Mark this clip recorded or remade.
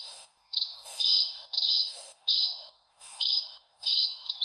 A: remade